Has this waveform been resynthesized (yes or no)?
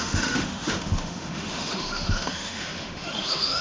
yes